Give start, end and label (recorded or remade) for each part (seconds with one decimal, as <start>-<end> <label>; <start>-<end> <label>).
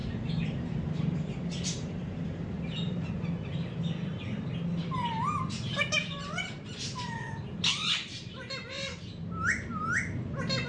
0.0-3.1 remade; 3.1-4.8 recorded; 4.8-9.3 remade; 9.3-10.7 recorded